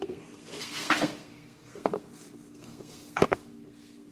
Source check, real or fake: fake